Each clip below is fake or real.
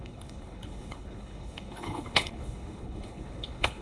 fake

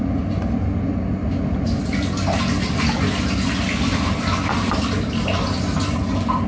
real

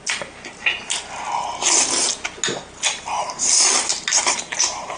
real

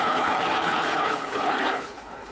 fake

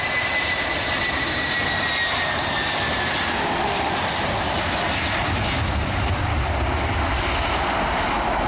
real